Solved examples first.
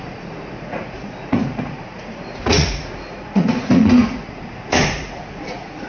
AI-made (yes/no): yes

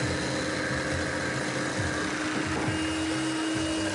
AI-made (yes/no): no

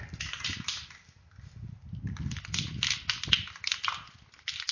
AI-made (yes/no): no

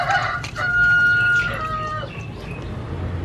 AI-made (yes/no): no